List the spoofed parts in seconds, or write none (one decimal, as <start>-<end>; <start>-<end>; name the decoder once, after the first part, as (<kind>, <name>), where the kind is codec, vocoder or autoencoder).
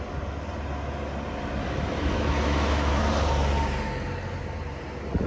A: 1.6-3.0 (autoencoder, DAC-VAE)